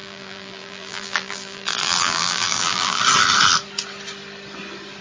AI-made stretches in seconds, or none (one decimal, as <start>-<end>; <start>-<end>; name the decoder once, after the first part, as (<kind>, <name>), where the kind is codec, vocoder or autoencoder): 0.0-3.0 (vocoder, BigVGAN v2)